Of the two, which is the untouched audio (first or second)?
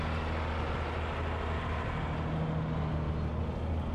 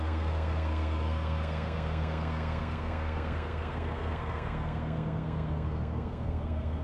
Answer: first